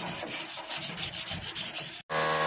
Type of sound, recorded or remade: recorded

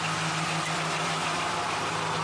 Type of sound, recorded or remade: recorded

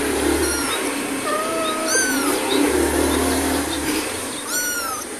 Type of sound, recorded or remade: remade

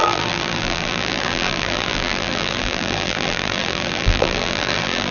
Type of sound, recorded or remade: remade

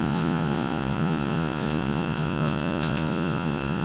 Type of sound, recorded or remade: remade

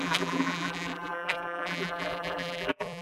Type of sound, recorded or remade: remade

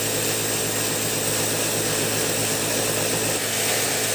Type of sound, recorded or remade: recorded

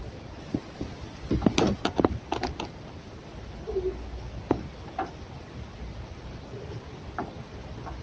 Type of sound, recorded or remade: recorded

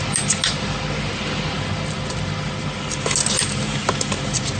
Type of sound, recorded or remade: recorded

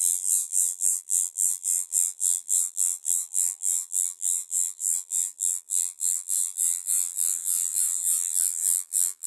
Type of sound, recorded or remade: remade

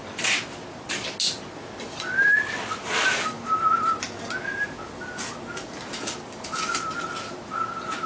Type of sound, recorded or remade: recorded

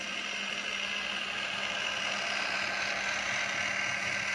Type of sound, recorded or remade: recorded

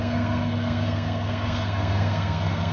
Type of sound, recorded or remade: remade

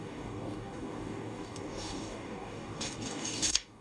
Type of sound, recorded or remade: remade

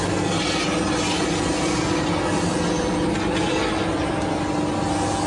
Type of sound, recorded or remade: recorded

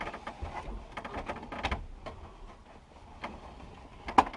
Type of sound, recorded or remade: recorded